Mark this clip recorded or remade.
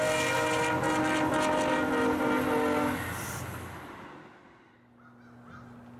recorded